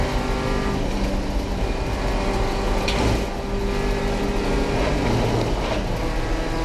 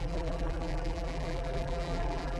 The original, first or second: first